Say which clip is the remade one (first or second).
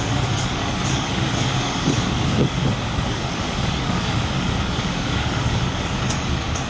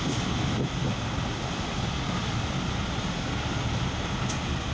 first